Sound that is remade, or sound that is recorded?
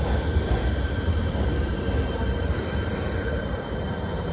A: remade